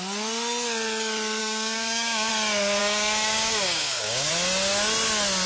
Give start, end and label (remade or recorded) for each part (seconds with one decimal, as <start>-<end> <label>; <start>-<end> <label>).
0.0-1.4 recorded; 1.4-2.3 remade; 2.3-2.8 recorded; 2.8-4.3 remade; 4.3-5.5 recorded